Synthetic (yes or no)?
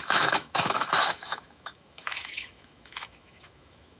yes